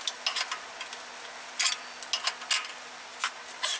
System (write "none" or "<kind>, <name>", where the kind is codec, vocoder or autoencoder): none